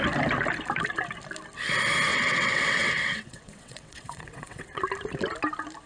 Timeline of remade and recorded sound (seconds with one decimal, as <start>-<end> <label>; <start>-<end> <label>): 0.0-2.1 recorded; 2.1-4.8 remade; 4.8-5.9 recorded